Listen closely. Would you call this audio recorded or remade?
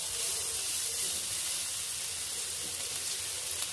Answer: recorded